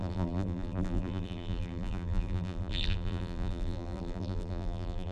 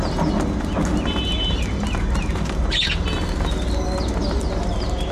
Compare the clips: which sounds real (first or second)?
second